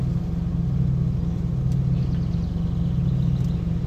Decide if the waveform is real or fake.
real